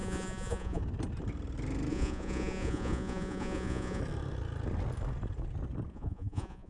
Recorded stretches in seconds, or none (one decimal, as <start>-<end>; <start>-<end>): 0.8-1.9; 4.0-5.9